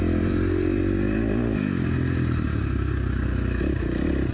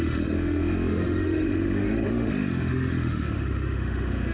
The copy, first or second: second